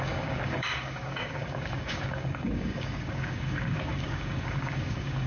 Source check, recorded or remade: remade